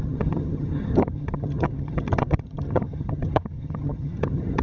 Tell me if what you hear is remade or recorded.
remade